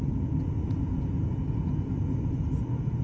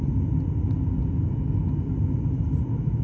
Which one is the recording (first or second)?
second